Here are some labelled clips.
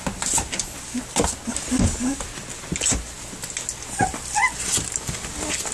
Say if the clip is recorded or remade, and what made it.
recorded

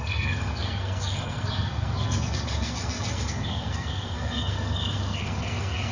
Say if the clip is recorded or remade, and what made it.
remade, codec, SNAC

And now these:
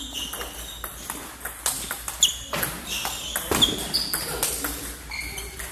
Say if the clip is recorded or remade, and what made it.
recorded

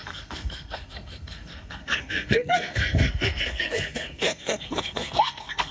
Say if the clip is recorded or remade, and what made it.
remade, codec, SNAC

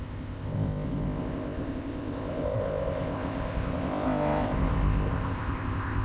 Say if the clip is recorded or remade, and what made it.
remade, codec, ZipCodec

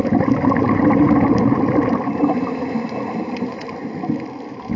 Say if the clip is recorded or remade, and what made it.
recorded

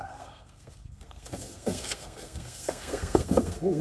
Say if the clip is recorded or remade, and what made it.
remade, codec, SNAC